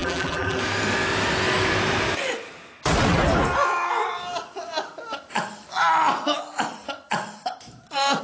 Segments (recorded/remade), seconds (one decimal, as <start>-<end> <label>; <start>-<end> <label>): 0.0-0.6 remade; 0.6-8.2 recorded